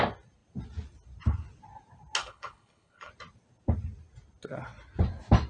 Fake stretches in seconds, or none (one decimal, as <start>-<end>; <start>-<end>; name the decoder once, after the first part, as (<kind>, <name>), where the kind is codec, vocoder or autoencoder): 2.2-3.1 (codec, HILCodec)